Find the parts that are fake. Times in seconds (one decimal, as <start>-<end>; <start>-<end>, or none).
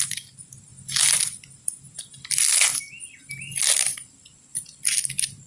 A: none